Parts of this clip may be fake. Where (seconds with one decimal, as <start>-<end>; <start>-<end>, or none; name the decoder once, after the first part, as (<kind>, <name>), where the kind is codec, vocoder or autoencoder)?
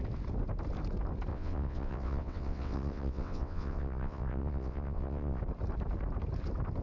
1.3-5.4 (vocoder, WaveNeXt)